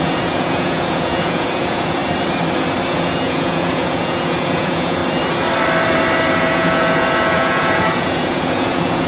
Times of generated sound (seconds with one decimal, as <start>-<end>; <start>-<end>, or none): 0.0-2.0; 2.9-5.0; 6.4-9.1